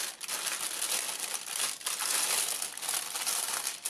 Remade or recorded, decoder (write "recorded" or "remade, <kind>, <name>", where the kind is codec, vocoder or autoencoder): recorded